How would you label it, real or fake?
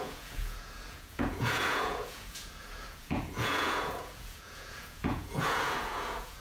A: fake